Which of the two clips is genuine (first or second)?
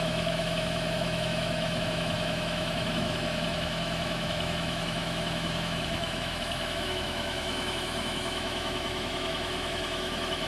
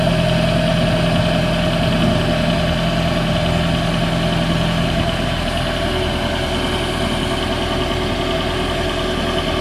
second